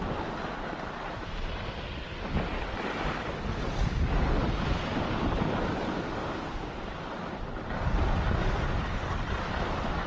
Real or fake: real